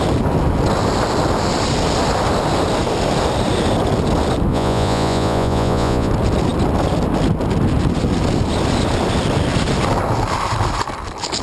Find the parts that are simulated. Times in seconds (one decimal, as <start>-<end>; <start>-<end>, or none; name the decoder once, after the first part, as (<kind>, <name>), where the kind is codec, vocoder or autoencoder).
4.5-6.1 (vocoder, Vocos)